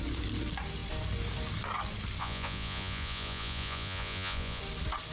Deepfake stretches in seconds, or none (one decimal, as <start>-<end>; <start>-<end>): 2.2-4.6